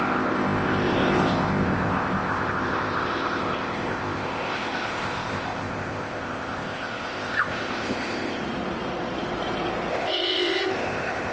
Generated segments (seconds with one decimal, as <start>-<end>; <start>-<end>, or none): 0.0-8.4; 9.9-11.3